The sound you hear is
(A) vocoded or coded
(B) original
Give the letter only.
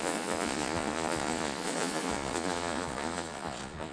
A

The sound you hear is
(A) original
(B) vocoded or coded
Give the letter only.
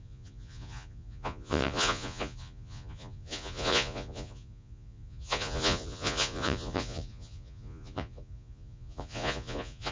B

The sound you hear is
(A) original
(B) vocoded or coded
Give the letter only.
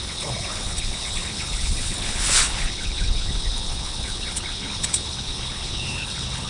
B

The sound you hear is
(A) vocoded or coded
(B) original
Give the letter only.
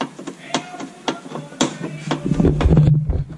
B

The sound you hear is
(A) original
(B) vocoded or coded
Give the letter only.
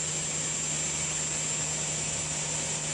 A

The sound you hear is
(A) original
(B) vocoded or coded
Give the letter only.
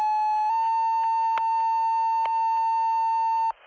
A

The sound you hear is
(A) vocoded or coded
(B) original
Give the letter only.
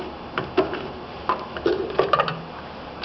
B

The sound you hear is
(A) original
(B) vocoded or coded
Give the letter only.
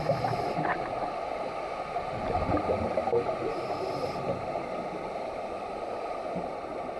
A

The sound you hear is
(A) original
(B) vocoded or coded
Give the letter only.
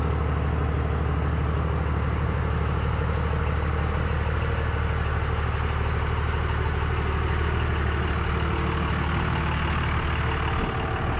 A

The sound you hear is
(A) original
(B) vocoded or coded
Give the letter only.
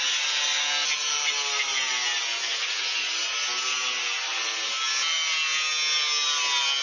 A